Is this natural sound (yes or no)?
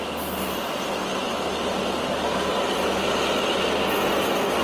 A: yes